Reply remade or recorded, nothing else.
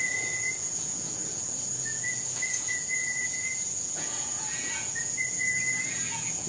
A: remade